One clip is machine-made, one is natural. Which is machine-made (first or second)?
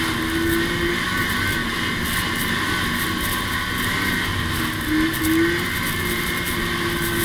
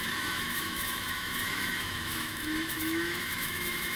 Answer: second